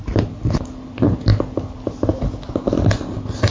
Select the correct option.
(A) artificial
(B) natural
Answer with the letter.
B